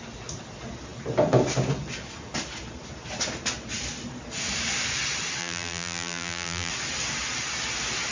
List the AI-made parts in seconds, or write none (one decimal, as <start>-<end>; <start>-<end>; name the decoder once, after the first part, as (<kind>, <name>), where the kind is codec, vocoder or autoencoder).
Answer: 5.4-6.7 (vocoder, BigVGAN v2)